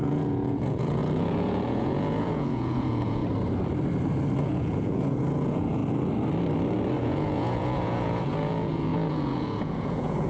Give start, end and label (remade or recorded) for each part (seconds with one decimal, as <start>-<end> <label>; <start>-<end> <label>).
0.0-3.2 remade; 3.2-4.4 recorded; 4.4-5.8 remade; 5.8-7.0 recorded; 7.0-10.3 remade